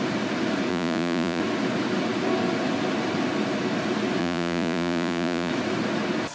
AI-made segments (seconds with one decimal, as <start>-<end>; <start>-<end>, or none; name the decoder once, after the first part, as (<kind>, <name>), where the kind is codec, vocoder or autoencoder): 0.7-1.4 (vocoder, Vocos); 4.2-5.5